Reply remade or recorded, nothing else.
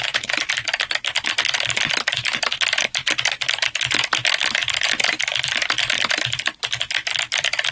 remade